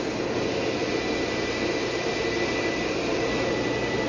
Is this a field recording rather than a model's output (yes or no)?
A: yes